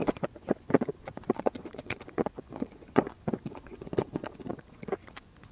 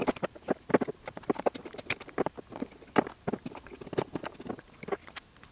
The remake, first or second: first